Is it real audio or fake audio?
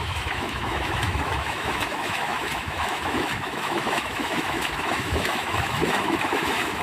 fake